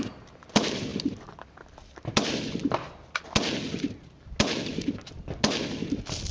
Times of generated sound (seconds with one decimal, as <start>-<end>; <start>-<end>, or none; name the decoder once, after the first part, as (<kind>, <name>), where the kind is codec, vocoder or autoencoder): none